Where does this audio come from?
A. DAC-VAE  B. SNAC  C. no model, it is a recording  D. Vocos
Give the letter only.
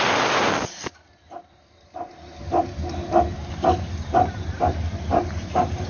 C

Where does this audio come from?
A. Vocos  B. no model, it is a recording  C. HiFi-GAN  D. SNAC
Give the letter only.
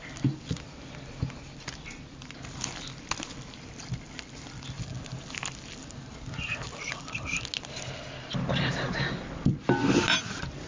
B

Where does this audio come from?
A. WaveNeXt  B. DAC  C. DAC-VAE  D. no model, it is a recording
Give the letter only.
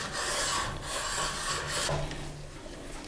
D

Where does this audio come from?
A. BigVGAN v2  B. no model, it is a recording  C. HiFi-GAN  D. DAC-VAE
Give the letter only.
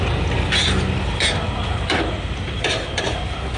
B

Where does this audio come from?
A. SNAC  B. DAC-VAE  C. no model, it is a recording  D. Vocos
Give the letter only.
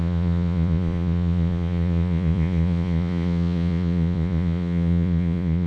D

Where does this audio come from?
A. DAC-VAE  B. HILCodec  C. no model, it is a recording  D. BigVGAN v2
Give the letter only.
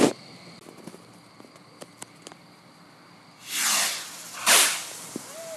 C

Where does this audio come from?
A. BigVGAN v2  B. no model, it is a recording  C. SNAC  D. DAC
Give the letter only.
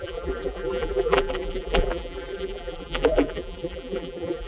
A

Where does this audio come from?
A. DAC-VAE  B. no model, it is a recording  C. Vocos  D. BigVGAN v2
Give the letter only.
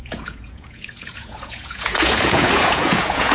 C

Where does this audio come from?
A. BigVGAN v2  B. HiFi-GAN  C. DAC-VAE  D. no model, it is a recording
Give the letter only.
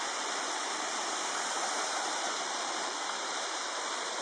A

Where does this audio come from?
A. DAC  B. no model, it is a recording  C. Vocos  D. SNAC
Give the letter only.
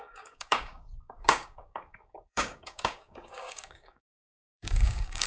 A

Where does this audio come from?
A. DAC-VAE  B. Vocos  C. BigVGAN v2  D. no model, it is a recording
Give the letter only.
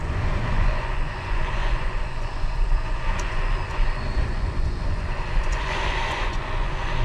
B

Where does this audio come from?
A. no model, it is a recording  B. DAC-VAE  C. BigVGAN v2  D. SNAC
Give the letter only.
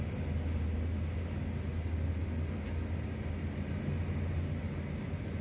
A